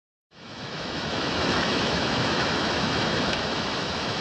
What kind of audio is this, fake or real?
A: fake